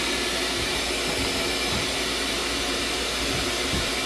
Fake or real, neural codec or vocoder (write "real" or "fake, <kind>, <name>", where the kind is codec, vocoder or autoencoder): real